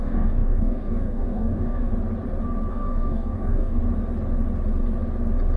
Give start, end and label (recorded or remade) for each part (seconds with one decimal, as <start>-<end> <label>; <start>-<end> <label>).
0.0-1.9 remade; 1.9-2.7 recorded; 2.7-3.8 remade; 3.8-5.6 recorded